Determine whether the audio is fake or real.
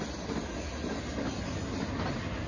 real